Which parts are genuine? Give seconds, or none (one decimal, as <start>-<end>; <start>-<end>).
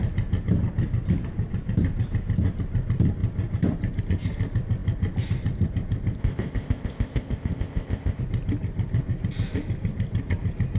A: 0.0-6.2; 8.2-10.8